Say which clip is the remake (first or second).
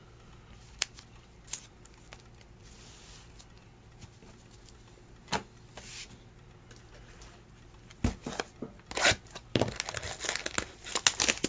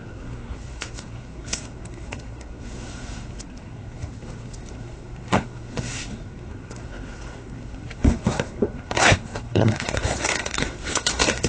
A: second